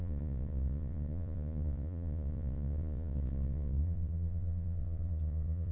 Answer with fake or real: fake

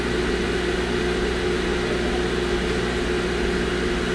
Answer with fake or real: real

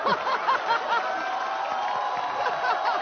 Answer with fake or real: real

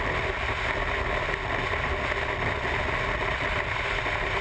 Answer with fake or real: real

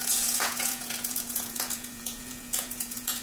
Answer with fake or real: fake